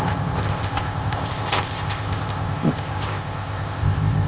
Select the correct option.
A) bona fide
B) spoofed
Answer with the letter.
B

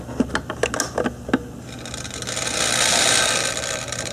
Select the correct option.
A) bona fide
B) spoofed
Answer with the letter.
A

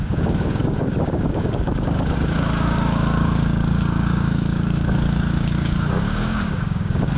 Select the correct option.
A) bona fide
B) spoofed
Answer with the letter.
B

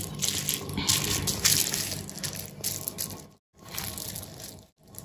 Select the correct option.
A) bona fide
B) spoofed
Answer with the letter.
A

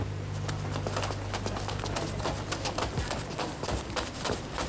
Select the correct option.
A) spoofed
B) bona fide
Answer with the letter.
B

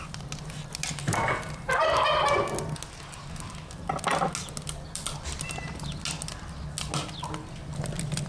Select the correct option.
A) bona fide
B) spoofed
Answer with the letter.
A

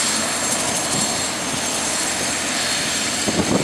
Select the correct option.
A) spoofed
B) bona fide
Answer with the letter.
B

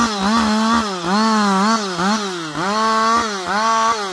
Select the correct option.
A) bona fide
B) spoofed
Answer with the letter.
A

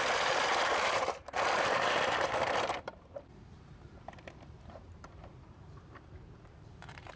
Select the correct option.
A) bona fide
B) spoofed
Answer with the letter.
B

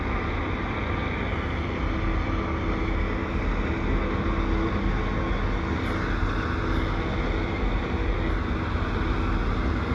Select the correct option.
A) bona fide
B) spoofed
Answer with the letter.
A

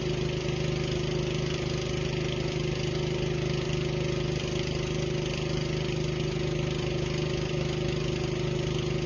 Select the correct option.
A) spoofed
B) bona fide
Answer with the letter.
B